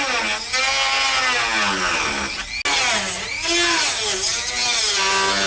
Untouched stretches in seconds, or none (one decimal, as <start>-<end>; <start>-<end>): 0.0-4.3; 4.9-5.5